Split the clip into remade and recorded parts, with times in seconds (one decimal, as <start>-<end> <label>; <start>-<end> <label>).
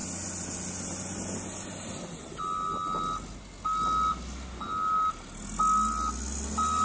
0.0-6.8 recorded